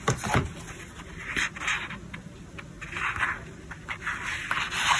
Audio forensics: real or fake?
real